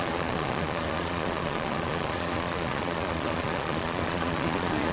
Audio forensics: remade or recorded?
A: remade